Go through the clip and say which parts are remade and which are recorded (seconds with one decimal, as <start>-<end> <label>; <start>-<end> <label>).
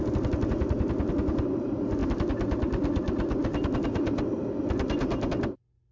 0.0-5.9 recorded